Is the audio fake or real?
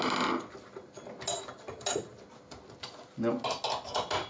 real